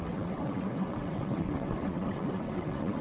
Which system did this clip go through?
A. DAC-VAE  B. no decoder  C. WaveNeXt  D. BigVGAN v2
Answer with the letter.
C